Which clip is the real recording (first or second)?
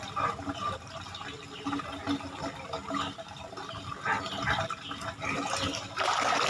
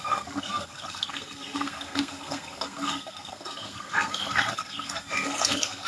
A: first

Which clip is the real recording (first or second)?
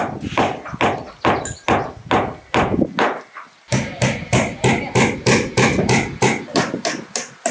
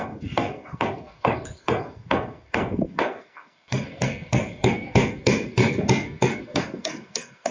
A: first